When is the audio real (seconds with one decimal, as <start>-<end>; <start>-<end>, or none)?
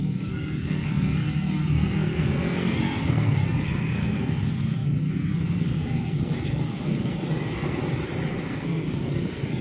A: 7.8-8.3